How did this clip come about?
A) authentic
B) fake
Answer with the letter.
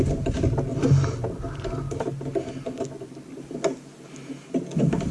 A